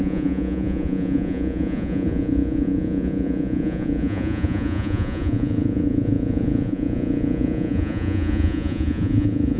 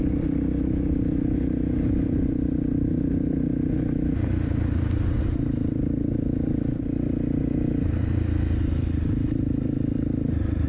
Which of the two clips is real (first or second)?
second